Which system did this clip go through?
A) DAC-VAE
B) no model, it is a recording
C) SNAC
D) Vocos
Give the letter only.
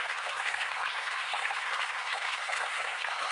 C